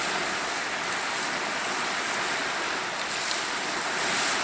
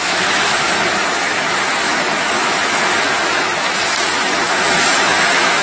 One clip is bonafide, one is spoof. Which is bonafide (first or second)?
first